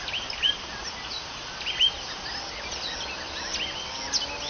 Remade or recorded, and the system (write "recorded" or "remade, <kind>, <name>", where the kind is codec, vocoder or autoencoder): recorded